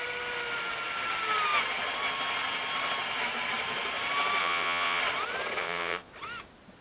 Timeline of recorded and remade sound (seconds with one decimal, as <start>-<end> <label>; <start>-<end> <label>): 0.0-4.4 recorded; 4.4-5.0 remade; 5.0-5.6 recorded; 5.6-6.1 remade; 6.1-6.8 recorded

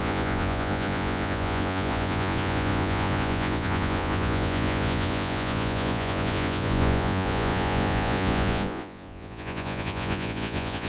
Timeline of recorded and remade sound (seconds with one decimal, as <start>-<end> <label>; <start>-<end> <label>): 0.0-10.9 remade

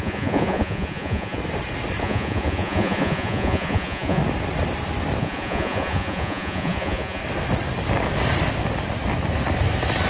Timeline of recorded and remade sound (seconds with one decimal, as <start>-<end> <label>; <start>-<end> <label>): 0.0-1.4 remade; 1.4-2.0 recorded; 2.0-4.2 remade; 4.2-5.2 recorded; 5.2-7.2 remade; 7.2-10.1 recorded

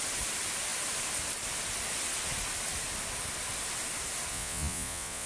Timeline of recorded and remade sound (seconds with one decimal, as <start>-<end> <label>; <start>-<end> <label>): 0.0-4.3 recorded; 4.3-5.3 remade

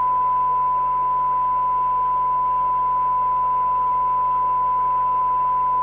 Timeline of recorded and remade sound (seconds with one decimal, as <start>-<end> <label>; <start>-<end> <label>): 0.0-5.8 recorded